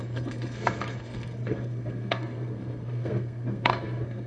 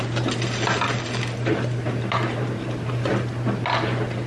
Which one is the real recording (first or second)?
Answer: second